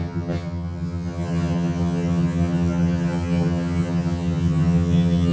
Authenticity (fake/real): fake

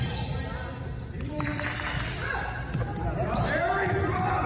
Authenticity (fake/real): real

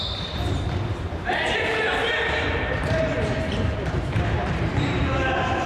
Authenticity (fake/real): fake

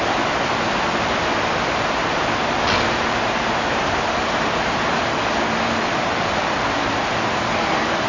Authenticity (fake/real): fake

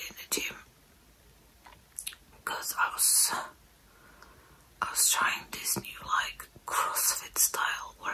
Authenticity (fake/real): real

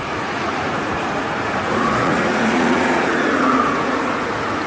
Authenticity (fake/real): fake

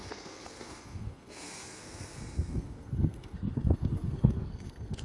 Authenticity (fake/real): fake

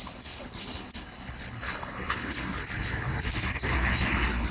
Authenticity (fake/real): fake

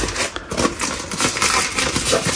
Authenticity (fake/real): real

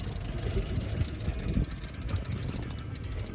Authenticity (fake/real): real